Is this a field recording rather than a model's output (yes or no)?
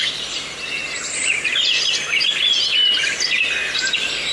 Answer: no